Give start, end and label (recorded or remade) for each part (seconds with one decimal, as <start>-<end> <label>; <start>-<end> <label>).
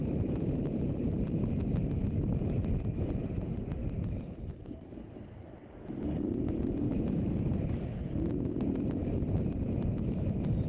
0.0-1.4 remade; 1.4-2.2 recorded; 2.2-3.8 remade; 3.8-6.5 recorded; 6.5-10.7 remade